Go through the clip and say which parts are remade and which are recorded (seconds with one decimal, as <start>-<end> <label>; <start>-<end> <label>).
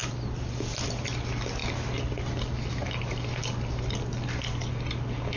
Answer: 0.0-5.4 recorded